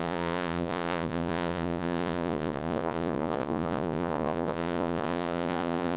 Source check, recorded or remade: remade